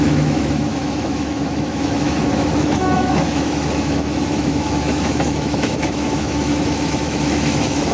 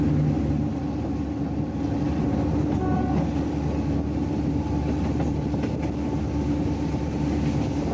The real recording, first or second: second